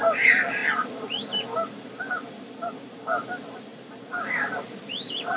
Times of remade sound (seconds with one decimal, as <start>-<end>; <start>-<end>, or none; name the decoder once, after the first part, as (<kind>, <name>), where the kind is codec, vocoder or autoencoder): none